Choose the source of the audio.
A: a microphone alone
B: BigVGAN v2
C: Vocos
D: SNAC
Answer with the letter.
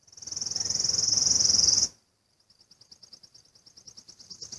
A